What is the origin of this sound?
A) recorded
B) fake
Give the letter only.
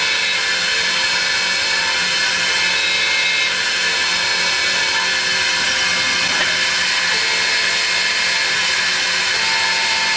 A